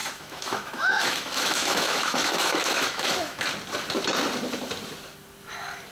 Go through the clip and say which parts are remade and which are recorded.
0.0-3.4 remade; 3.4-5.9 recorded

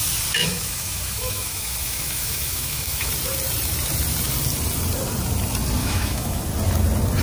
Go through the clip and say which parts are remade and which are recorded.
0.0-0.4 recorded; 0.4-3.1 remade; 3.1-5.8 recorded; 5.8-6.5 remade; 6.5-7.2 recorded